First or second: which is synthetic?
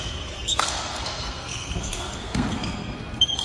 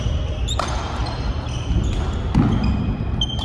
first